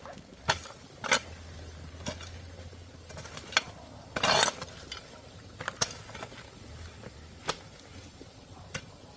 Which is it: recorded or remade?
recorded